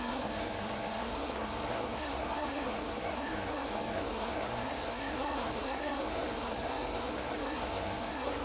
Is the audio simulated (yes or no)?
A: yes